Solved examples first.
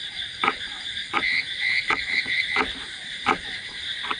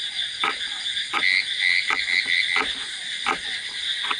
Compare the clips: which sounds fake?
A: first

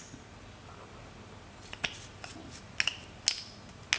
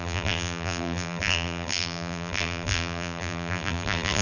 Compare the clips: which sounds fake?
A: second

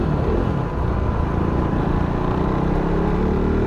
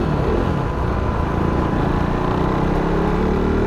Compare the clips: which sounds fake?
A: first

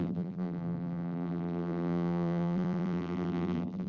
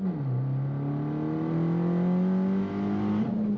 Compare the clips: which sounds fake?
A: first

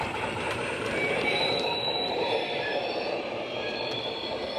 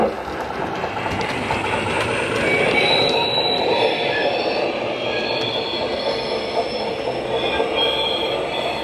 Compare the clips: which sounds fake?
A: first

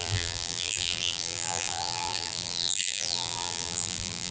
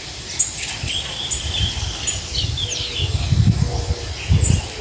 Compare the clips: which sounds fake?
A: first